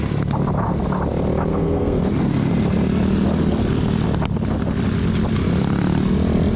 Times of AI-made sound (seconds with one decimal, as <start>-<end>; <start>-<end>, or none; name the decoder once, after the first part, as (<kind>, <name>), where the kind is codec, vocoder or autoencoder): 1.5-2.0 (codec, SNAC)